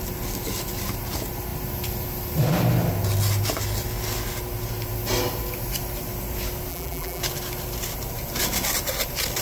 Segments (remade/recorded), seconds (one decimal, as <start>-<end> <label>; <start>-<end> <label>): 0.0-6.7 recorded; 6.7-7.2 remade; 7.2-9.4 recorded